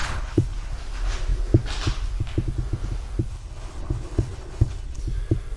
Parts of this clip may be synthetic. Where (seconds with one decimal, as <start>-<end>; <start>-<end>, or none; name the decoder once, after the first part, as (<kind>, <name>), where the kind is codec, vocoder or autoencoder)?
0.0-0.7 (codec, HILCodec); 3.3-5.0